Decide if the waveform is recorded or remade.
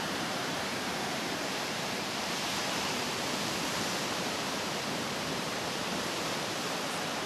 remade